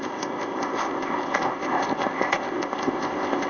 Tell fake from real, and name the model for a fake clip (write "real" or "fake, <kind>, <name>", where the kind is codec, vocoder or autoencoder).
fake, codec, ZipCodec